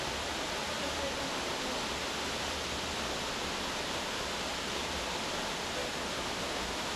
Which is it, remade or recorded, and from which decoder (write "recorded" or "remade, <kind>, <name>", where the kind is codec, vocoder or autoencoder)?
recorded